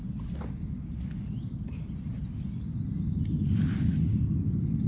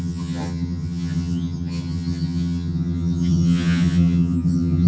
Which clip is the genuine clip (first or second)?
first